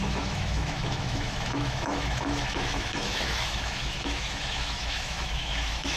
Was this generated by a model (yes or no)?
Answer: yes